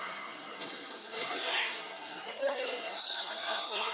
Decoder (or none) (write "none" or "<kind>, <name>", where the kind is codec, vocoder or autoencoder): codec, SNAC